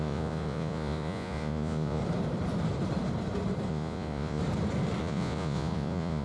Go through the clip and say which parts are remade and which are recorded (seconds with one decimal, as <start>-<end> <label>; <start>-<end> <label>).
0.0-2.0 remade; 2.0-3.7 recorded; 3.7-4.4 remade; 4.4-5.0 recorded; 5.0-6.2 remade